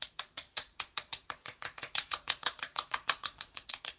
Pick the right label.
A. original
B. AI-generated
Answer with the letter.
B